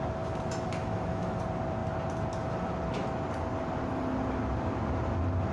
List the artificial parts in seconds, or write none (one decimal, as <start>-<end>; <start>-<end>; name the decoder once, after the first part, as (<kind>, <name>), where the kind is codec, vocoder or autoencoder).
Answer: 0.8-1.4 (autoencoder, DAC-VAE)